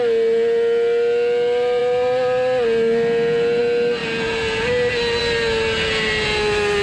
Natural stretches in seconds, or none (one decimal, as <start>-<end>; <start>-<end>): 0.0-6.8